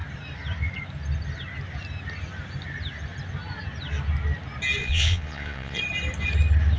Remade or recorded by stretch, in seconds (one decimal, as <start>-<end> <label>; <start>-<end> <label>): 0.0-4.8 recorded; 4.8-5.8 remade; 5.8-6.8 recorded